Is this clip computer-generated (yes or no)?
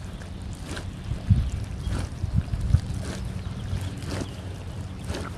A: no